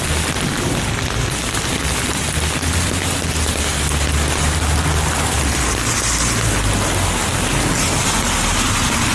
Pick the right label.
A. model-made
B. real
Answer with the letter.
B